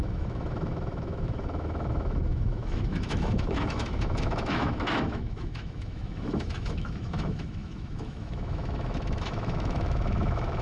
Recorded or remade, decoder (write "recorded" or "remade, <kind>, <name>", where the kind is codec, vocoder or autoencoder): remade, autoencoder, DAC-VAE